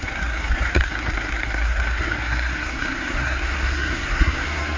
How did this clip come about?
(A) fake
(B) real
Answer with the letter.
A